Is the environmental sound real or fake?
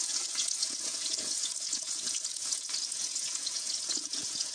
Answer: fake